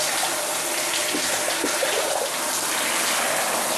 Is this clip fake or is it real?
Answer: real